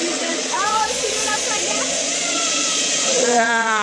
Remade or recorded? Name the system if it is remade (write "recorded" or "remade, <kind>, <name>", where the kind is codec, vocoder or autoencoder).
remade, vocoder, Vocos